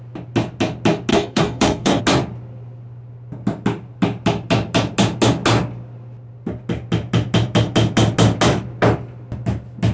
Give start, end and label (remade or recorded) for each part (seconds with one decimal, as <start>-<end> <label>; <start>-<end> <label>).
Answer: 0.0-1.1 recorded; 1.1-2.0 remade; 2.0-9.9 recorded